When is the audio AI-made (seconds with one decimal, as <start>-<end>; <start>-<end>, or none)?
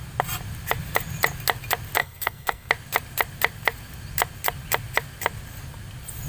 2.0-2.7